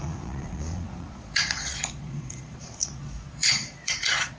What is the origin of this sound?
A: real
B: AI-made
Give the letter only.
B